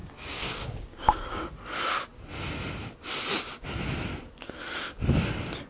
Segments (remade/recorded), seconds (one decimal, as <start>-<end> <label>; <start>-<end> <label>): 0.0-1.5 remade; 1.5-5.7 recorded